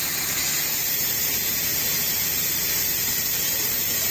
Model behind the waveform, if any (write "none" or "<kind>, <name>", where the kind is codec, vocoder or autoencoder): none